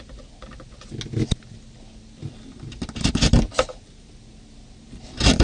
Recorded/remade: recorded